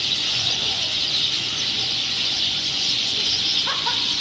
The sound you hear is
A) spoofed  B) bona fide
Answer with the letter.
A